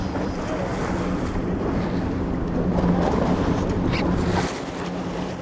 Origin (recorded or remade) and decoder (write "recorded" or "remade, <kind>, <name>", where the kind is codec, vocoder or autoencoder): recorded